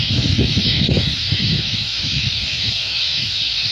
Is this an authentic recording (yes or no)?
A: no